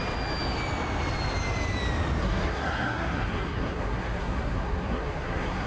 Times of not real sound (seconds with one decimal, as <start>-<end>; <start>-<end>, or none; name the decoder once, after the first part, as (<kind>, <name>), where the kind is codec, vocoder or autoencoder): 2.2-5.7 (codec, SNAC)